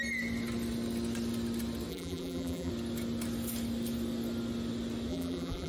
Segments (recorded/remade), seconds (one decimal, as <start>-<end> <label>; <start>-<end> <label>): 0.0-1.9 recorded; 1.9-2.7 remade; 2.7-5.1 recorded; 5.1-5.7 remade